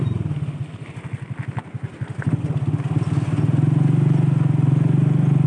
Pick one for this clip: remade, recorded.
recorded